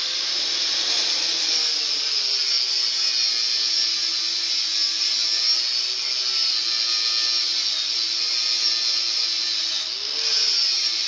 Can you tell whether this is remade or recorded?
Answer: recorded